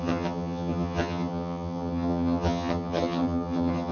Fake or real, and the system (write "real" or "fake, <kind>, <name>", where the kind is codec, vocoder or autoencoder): fake, vocoder, HiFi-GAN